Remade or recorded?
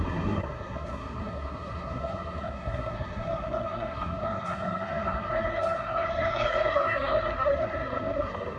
remade